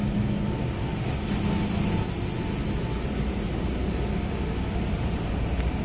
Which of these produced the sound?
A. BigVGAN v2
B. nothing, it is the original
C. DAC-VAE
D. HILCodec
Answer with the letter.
B